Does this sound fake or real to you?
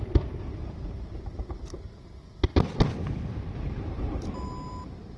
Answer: real